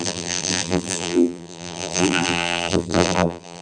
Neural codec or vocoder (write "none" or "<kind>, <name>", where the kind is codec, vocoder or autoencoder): vocoder, BigVGAN v2